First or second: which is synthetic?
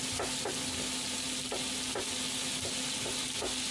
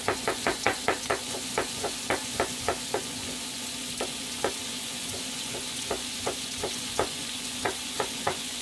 second